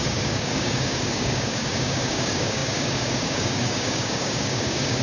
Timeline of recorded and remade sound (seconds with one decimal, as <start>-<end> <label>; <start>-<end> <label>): 0.0-5.0 remade